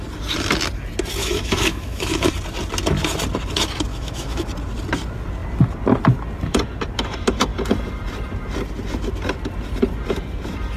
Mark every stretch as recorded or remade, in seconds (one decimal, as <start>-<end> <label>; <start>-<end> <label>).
0.0-1.2 recorded; 1.2-2.3 remade; 2.3-3.9 recorded; 3.9-4.5 remade; 4.5-10.8 recorded